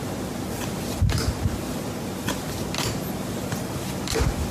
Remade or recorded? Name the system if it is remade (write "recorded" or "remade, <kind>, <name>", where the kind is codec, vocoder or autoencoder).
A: recorded